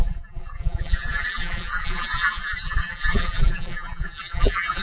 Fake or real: fake